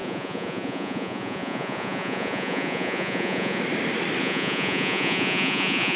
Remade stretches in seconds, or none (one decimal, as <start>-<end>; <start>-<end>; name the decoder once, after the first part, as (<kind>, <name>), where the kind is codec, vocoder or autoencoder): 0.0-3.6 (vocoder, Vocos); 4.2-6.0